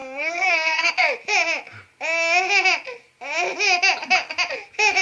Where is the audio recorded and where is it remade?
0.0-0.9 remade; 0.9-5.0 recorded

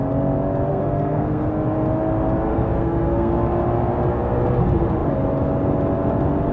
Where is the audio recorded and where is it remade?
0.0-0.7 recorded; 0.7-1.5 remade; 1.5-2.5 recorded; 2.5-3.3 remade; 3.3-6.5 recorded

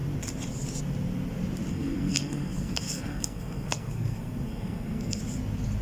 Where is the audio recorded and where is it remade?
0.0-1.7 recorded; 1.7-5.2 remade; 5.2-5.8 recorded